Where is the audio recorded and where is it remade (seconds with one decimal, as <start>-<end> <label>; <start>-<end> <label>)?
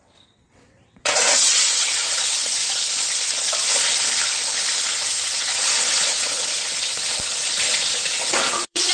0.0-2.6 remade; 2.6-4.8 recorded; 4.8-8.9 remade